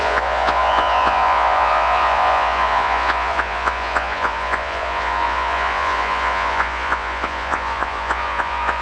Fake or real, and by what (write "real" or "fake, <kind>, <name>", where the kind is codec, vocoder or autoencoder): fake, vocoder, Vocos